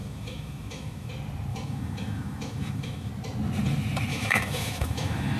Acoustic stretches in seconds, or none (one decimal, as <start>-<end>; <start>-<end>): 1.1-1.5; 3.1-4.1